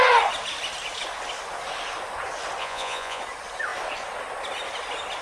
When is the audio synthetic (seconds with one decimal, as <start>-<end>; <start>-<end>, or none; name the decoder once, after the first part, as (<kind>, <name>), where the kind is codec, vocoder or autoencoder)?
2.6-3.2 (vocoder, Vocos)